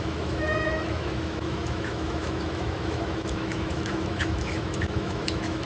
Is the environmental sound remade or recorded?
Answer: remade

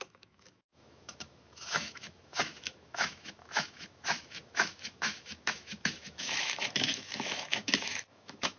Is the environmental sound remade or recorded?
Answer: remade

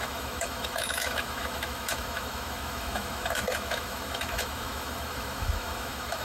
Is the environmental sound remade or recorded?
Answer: remade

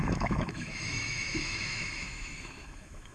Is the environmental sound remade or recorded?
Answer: remade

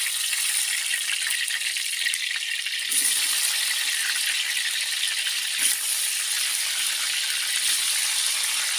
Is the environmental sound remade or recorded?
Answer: recorded